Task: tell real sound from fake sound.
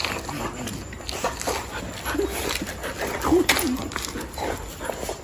real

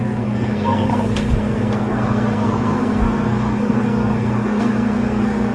fake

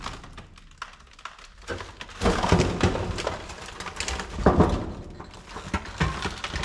real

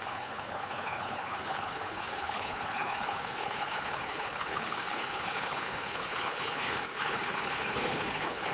fake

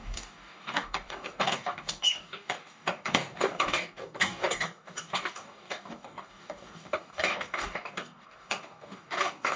fake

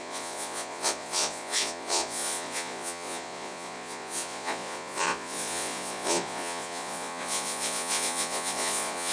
fake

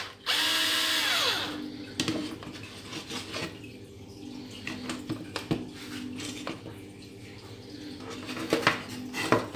real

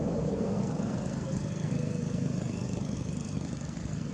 fake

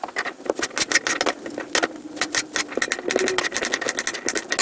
real